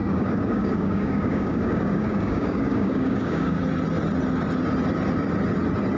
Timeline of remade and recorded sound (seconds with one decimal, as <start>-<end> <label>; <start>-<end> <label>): 0.0-3.6 remade; 3.6-6.0 recorded